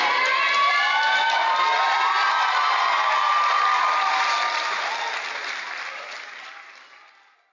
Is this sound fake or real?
real